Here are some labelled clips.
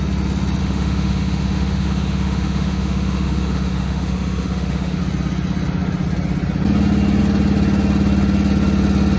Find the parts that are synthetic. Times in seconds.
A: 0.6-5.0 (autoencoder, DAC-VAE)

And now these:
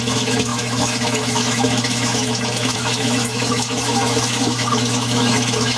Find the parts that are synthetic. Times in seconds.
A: 0.0-5.8 (autoencoder, DAC-VAE)

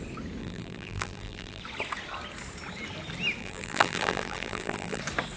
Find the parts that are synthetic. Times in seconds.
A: 0.4-1.6 (vocoder, BigVGAN v2); 3.4-5.0

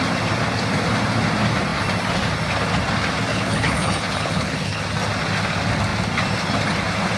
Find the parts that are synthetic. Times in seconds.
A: 3.3-4.8 (codec, HILCodec)